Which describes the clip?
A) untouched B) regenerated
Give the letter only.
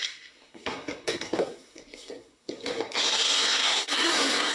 B